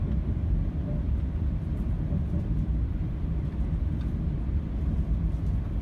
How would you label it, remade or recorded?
remade